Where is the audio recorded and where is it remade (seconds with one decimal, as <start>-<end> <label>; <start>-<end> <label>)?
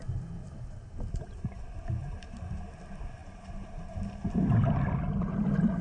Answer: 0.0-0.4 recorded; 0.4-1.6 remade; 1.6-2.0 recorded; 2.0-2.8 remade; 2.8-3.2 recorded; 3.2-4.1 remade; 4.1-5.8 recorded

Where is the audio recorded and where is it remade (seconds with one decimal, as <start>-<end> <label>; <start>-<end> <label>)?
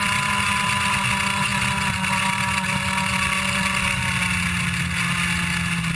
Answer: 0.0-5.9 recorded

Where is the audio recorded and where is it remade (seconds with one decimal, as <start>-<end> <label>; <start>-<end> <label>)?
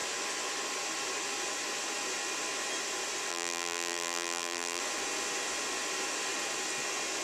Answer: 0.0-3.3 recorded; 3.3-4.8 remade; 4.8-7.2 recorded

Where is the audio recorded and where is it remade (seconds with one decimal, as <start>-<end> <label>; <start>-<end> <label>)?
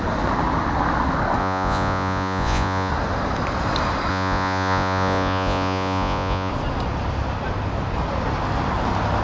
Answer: 0.0-1.4 recorded; 1.4-2.9 remade; 2.9-4.1 recorded; 4.1-6.5 remade; 6.5-9.2 recorded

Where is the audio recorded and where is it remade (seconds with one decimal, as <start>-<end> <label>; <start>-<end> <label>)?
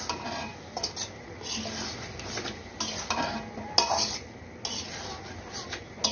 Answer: 0.0-6.1 recorded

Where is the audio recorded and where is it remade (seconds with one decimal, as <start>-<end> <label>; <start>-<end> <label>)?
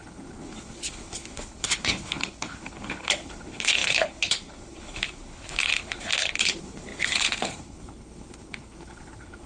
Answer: 0.0-9.5 remade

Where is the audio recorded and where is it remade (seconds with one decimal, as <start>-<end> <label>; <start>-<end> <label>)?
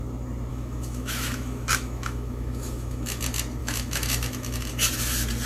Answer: 0.0-0.5 recorded; 0.5-3.2 remade; 3.2-3.6 recorded; 3.6-4.7 remade; 4.7-5.5 recorded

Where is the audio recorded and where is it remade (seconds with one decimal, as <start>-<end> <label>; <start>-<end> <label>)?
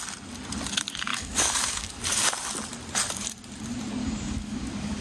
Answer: 0.0-1.1 recorded; 1.1-2.0 remade; 2.0-4.0 recorded; 4.0-5.0 remade